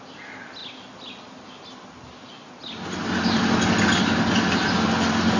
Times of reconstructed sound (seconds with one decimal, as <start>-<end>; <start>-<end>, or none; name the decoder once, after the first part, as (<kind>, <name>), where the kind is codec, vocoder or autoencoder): none